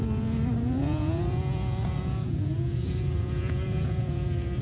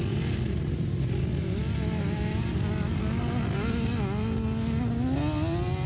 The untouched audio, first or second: second